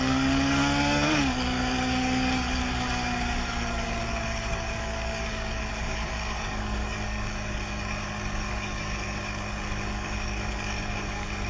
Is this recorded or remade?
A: remade